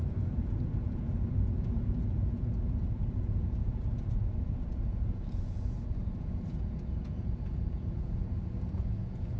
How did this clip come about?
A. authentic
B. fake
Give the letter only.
B